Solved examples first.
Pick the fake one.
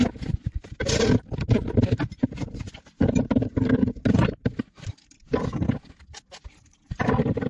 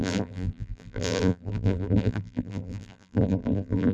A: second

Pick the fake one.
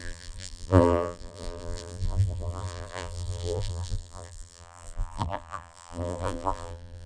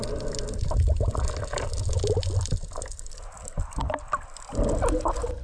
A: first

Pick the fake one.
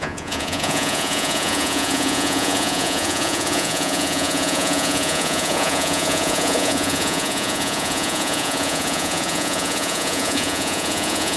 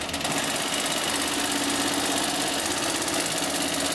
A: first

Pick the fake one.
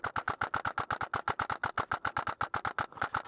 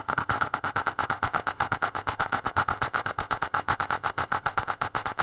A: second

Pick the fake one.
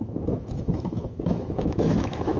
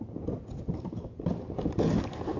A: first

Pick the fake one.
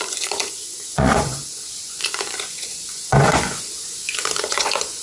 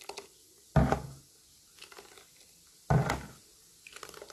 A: first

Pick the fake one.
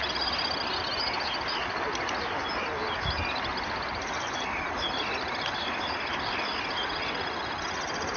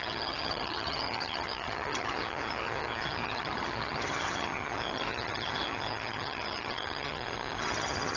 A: second